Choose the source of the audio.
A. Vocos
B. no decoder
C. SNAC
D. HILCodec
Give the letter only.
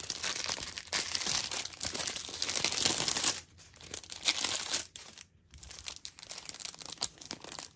B